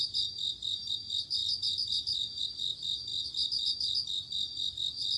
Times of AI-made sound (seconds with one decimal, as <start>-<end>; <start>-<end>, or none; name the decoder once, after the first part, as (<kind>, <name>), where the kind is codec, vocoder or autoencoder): none